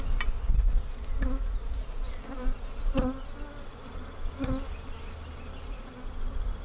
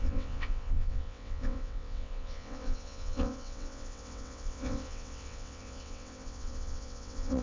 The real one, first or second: first